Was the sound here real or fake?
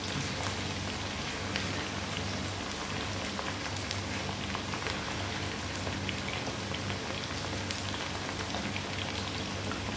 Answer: real